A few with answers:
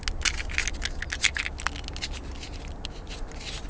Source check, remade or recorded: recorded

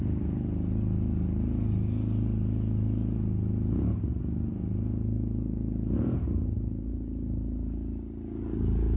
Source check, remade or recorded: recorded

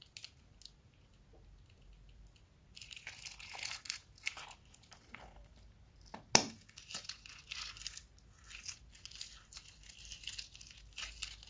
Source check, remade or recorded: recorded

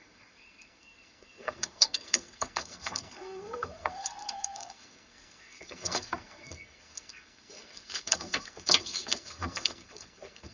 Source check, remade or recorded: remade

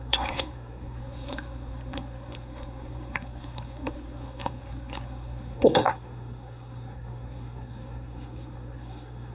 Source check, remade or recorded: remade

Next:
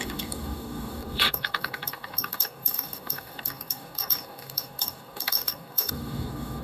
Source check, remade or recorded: remade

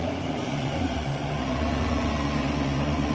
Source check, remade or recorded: remade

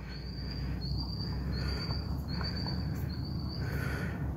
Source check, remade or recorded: recorded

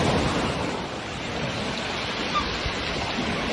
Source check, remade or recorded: recorded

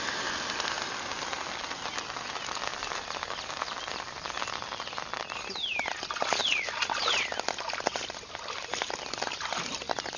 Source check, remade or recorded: recorded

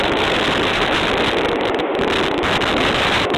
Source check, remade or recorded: remade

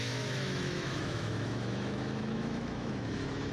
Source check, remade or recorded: remade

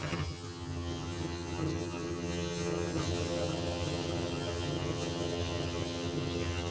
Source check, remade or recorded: remade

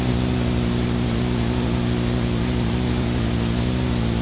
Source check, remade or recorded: recorded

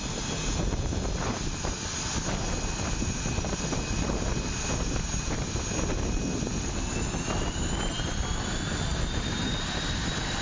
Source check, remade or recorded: recorded